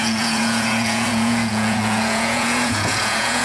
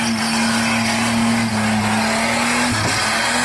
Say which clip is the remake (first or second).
first